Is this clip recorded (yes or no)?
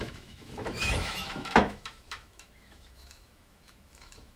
no